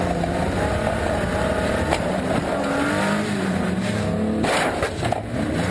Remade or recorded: recorded